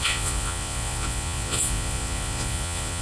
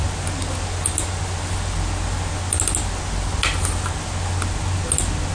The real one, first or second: second